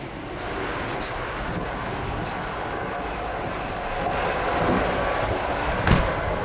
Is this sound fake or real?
real